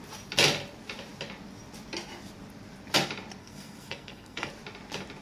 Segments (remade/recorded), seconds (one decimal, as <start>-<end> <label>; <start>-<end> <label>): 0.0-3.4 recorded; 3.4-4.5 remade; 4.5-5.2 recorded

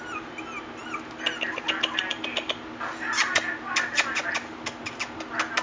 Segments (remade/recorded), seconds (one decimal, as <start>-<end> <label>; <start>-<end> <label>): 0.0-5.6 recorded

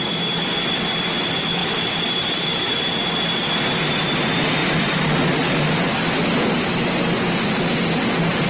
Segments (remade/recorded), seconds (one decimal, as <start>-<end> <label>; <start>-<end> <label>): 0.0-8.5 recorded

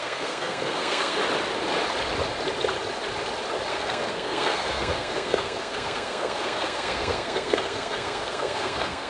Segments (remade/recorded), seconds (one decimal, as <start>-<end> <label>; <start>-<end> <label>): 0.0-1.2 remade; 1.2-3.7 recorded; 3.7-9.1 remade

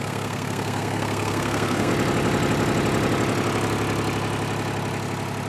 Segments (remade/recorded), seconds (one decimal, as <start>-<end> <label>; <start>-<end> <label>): 0.0-1.9 remade; 1.9-5.5 recorded

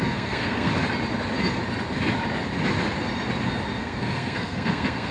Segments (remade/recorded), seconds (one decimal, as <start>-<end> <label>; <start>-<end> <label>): 0.0-0.7 remade; 0.7-3.8 recorded; 3.8-5.1 remade

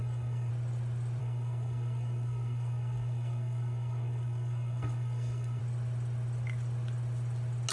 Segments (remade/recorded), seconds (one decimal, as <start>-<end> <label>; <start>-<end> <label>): 0.0-0.5 remade; 0.5-1.2 recorded; 1.2-5.6 remade; 5.6-7.7 recorded